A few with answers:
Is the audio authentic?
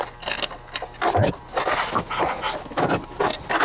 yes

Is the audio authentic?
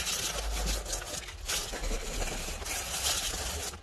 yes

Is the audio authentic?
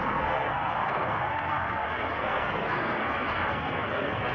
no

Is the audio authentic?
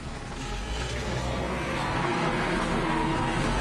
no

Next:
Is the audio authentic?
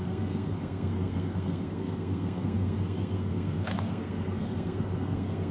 no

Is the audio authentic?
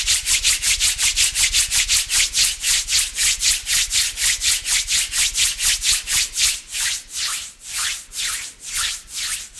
yes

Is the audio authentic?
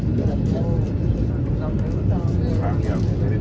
yes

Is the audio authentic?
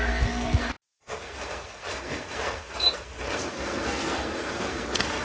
no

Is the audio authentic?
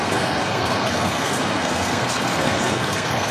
no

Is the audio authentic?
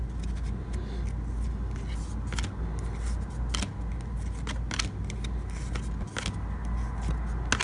yes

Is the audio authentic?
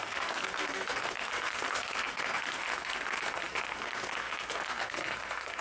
no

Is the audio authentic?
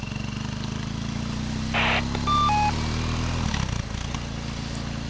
yes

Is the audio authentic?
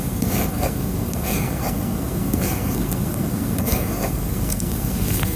no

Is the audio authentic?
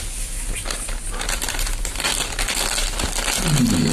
yes